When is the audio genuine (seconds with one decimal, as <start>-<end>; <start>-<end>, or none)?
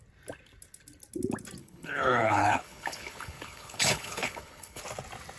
0.0-1.6; 4.8-5.4